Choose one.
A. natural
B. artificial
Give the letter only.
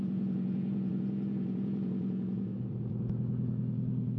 B